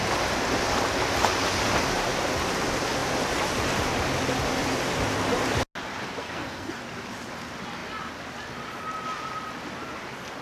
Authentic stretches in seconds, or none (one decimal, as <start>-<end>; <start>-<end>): 0.0-6.2; 6.8-10.4

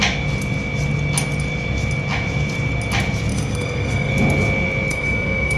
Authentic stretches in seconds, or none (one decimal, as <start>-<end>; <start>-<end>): 0.0-3.3; 4.1-4.9

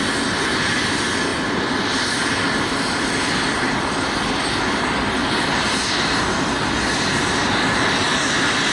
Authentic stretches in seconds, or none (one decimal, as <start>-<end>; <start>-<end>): 0.0-8.7